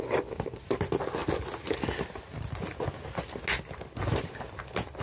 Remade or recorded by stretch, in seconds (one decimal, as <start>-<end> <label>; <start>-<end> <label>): 0.0-5.0 recorded